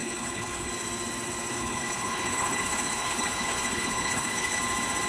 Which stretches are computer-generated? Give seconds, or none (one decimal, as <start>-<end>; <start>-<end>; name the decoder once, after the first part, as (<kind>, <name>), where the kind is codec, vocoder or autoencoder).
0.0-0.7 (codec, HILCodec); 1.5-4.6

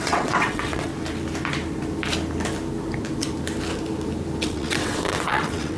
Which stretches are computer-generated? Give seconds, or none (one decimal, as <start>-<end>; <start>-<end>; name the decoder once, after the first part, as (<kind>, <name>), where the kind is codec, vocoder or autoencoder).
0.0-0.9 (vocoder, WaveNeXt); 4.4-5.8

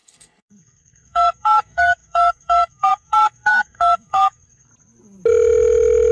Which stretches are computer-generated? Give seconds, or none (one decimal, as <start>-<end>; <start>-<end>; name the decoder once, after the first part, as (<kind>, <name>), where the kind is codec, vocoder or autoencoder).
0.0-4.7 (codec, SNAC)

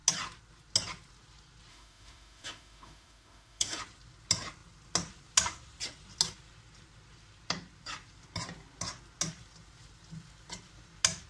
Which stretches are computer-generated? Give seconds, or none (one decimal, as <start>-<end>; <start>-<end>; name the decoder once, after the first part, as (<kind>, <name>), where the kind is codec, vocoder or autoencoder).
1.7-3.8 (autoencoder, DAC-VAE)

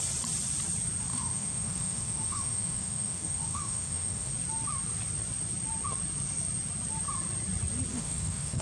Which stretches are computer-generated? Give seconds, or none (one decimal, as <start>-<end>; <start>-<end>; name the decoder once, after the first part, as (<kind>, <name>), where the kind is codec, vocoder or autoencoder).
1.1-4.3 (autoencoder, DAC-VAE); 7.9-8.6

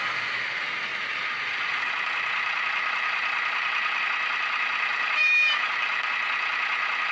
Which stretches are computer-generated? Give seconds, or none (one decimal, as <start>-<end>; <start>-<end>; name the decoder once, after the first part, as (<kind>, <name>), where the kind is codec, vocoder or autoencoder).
0.9-4.0 (vocoder, BigVGAN v2); 4.9-6.1

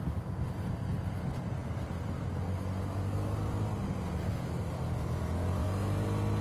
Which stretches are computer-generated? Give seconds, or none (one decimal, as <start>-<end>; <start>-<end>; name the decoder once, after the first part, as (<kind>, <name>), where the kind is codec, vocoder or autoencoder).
none